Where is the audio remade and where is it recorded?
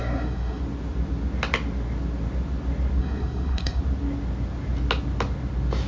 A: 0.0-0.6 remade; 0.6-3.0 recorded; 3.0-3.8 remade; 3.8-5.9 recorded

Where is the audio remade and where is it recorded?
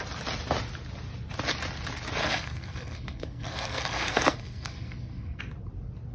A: 0.0-2.2 recorded; 2.2-5.4 remade; 5.4-6.1 recorded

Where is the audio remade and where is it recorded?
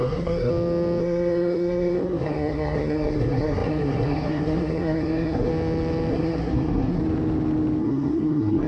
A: 0.0-0.5 remade; 0.5-1.0 recorded; 1.0-5.5 remade; 5.5-6.1 recorded; 6.1-7.0 remade; 7.0-7.8 recorded; 7.8-8.7 remade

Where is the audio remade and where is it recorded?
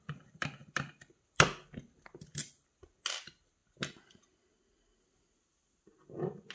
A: 0.0-6.5 recorded